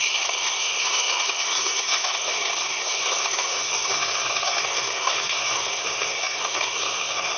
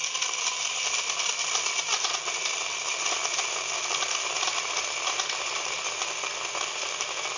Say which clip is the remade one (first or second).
first